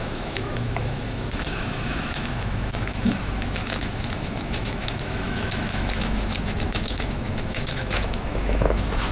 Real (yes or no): no